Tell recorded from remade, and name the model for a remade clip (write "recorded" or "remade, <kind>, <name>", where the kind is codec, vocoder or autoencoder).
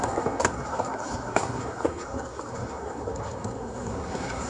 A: remade, codec, SNAC